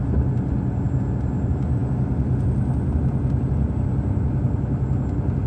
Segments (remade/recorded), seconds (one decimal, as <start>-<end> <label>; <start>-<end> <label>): 0.0-5.5 recorded